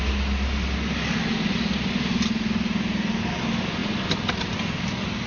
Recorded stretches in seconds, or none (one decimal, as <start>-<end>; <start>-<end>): 0.0-5.3